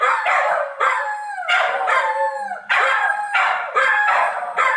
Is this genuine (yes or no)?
yes